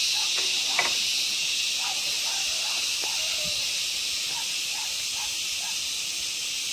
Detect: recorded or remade recorded